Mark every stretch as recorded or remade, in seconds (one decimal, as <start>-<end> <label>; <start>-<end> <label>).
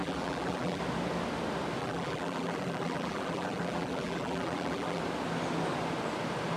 0.0-0.8 remade; 0.8-1.8 recorded; 1.8-5.0 remade; 5.0-6.6 recorded